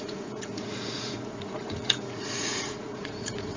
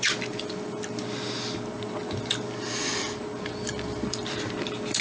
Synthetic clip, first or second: first